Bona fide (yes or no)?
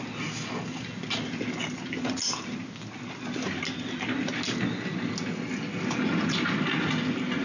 yes